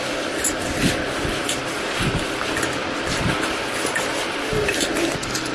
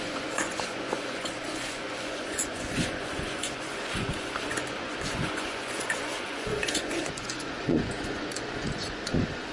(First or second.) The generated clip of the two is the second